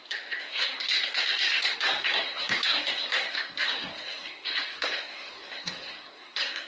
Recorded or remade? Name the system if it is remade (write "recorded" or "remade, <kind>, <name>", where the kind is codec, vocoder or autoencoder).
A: remade, codec, SNAC